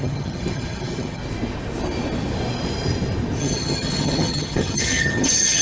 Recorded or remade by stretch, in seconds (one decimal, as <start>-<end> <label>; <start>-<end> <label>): 0.0-1.2 remade; 1.2-3.4 recorded; 3.4-5.6 remade